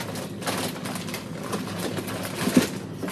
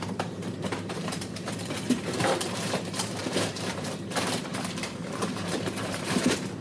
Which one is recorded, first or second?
first